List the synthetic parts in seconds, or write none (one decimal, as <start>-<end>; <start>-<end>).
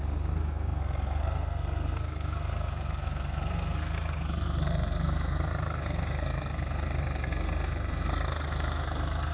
0.0-9.3